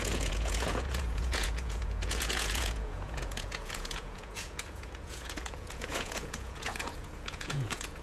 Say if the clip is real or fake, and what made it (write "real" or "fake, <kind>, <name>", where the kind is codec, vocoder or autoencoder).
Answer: fake, vocoder, Vocos